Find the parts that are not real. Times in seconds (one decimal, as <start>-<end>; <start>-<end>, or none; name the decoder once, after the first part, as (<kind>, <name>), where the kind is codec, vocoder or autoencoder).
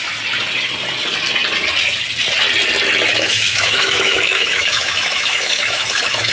3.1-6.3 (autoencoder, DAC-VAE)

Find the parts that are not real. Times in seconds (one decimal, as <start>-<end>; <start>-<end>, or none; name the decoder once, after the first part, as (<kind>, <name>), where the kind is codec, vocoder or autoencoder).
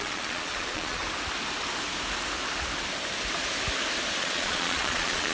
0.0-1.0 (vocoder, Vocos); 4.2-5.3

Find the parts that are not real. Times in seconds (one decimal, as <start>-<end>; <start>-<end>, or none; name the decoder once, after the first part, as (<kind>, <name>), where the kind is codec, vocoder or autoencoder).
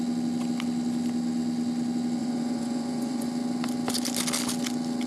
2.2-3.3 (vocoder, Vocos)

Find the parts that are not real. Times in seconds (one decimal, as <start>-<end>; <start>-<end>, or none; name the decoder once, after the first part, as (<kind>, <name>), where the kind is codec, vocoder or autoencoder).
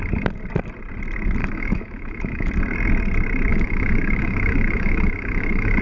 1.4-2.5 (autoencoder, DAC-VAE); 3.5-5.8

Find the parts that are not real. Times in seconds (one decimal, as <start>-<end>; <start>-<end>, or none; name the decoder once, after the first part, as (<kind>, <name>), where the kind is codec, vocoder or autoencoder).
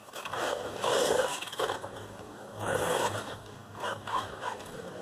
0.0-5.0 (codec, DAC)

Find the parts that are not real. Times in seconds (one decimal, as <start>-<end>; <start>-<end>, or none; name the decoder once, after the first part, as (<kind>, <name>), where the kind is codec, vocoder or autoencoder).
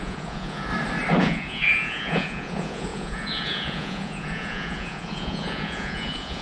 0.0-0.7 (vocoder, Vocos); 1.2-6.4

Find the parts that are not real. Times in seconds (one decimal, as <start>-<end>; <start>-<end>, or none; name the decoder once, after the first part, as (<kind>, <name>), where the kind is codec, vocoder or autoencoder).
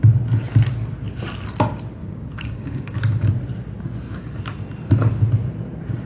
2.0-3.3 (codec, DAC)